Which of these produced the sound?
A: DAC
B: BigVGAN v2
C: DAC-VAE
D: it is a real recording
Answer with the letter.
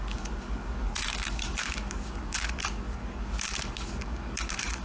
A